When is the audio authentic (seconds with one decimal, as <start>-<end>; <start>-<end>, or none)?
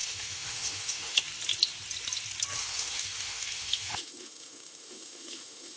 1.2-2.6